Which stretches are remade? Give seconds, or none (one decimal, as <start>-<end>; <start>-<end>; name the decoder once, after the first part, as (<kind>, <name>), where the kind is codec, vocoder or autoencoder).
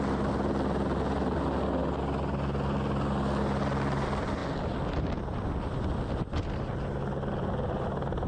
none